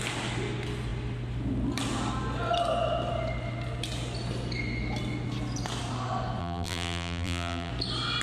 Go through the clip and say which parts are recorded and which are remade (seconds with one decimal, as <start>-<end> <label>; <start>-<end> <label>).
0.0-6.4 recorded; 6.4-7.7 remade; 7.7-8.2 recorded